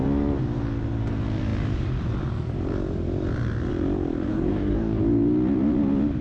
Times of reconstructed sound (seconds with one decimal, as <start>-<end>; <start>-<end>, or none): 4.3-5.0